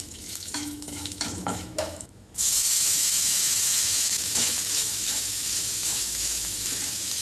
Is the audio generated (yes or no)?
yes